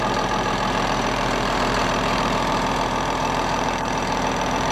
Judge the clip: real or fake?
fake